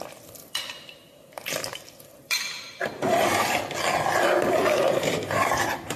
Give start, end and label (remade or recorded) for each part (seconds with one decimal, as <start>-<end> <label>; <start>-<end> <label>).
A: 0.0-0.4 recorded; 0.4-3.6 remade; 3.6-4.6 recorded; 4.6-6.0 remade